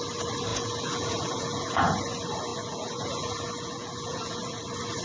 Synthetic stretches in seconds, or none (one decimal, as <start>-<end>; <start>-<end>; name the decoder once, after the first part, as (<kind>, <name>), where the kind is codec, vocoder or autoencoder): 0.5-2.0 (vocoder, Vocos); 2.5-4.6